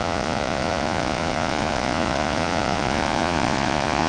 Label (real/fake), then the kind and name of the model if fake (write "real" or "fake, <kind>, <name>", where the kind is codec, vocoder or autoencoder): fake, vocoder, Vocos